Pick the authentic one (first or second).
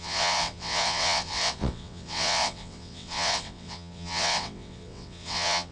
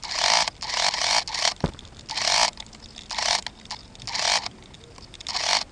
second